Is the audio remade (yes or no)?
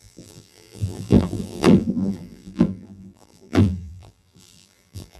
yes